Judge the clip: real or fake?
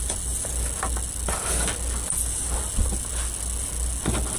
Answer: real